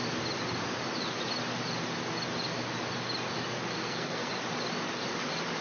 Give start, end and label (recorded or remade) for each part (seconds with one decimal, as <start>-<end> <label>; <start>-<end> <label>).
0.0-3.8 recorded; 3.8-4.3 remade; 4.3-5.6 recorded